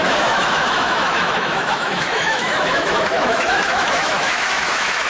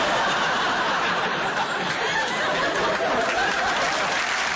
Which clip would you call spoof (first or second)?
first